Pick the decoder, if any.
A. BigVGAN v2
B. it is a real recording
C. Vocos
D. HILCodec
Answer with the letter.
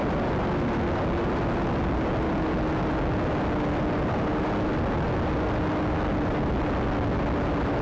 B